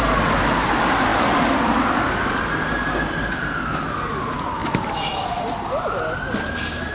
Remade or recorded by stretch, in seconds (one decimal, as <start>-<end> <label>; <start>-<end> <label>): 0.0-4.6 recorded; 4.6-5.4 remade; 5.4-6.9 recorded